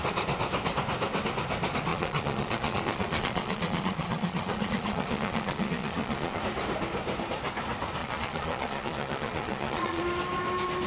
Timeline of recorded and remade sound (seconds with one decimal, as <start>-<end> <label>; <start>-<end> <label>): 0.0-1.9 recorded; 1.9-6.4 remade; 6.4-8.0 recorded; 8.0-10.0 remade; 10.0-10.9 recorded